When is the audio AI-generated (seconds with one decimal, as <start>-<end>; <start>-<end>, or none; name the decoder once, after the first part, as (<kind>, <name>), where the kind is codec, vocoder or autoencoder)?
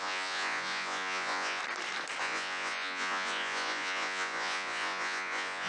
0.0-1.6 (vocoder, Vocos); 2.2-5.7